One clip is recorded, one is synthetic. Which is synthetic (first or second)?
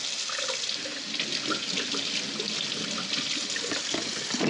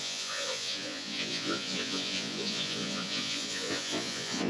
second